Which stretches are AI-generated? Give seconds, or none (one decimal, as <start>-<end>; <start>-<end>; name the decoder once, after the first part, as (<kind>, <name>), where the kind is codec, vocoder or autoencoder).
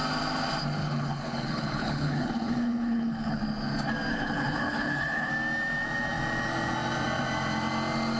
0.8-3.4 (codec, HILCodec); 4.1-5.3